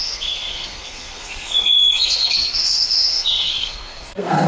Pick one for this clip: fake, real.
fake